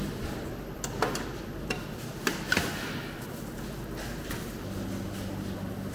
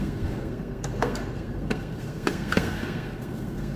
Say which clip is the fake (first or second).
second